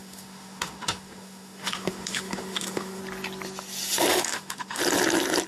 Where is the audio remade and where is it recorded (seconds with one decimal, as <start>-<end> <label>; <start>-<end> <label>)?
0.0-3.0 remade; 3.0-4.1 recorded; 4.1-4.8 remade; 4.8-5.5 recorded